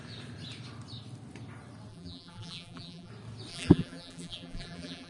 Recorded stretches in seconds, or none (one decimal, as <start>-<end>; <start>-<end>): 0.0-1.9; 3.1-3.5